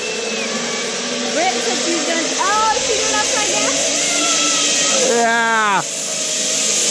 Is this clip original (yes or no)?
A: yes